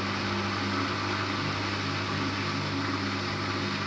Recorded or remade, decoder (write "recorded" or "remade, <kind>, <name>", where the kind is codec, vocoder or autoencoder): recorded